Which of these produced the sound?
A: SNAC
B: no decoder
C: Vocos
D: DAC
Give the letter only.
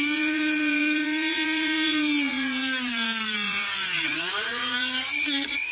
C